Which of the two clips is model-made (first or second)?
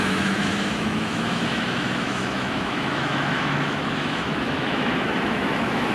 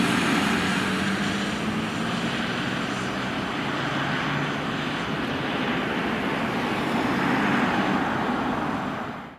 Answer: first